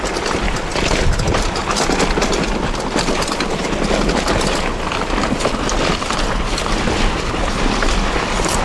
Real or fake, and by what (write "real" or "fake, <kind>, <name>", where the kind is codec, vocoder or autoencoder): real